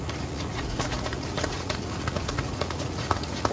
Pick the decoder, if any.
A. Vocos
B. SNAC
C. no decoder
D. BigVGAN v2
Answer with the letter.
A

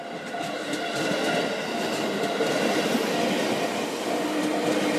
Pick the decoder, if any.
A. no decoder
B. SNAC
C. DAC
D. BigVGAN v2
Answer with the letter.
A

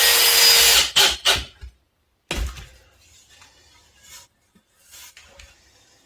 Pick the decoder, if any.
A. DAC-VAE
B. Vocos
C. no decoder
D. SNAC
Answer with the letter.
C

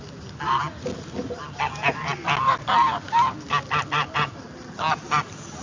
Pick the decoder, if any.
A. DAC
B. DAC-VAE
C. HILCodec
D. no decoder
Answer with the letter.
D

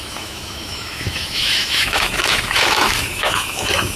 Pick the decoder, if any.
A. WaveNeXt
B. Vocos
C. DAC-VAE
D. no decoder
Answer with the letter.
C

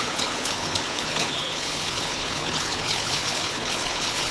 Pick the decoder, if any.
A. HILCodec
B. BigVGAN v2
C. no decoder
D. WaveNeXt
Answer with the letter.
A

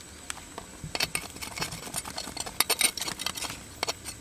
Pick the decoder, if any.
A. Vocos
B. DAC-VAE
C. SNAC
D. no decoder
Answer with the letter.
D